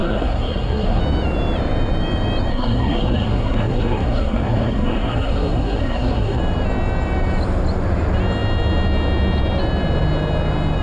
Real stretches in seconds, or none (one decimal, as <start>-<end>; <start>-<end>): 1.0-2.5; 6.4-10.8